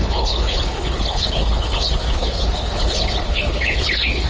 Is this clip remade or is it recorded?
remade